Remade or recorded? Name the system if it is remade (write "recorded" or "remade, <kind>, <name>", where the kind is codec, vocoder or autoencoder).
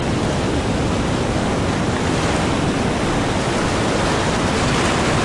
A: recorded